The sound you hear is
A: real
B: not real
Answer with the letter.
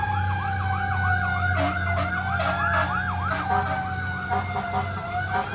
A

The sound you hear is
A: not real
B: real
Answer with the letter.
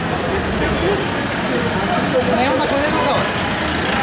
B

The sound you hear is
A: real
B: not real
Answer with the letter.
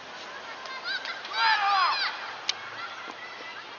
A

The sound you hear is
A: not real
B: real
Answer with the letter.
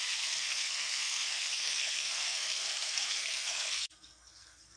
A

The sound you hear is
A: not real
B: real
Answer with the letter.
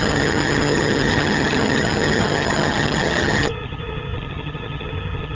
A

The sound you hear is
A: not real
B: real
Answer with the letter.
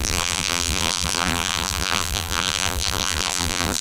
A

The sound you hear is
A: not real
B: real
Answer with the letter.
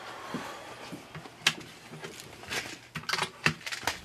B